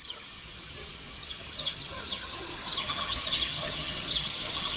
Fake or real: fake